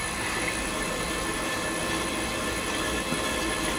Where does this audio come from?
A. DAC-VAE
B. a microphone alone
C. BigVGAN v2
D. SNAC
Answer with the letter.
B